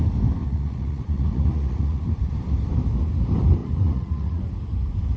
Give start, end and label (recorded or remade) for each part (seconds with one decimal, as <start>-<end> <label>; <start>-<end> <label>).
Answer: 0.0-0.4 recorded; 0.4-2.0 remade; 2.0-3.6 recorded; 3.6-4.4 remade; 4.4-5.2 recorded